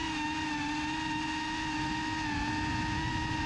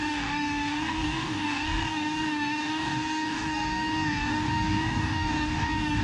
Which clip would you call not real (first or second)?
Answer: second